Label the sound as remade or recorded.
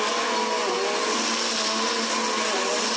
recorded